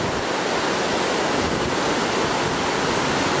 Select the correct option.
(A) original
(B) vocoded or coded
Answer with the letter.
A